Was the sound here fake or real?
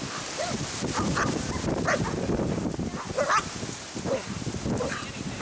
real